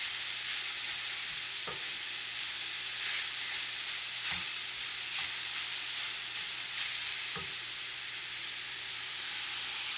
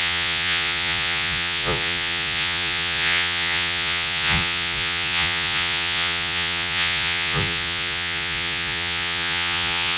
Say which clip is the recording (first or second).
first